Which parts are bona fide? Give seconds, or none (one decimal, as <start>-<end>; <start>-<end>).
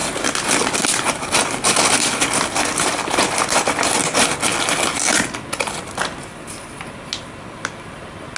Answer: 0.5-8.4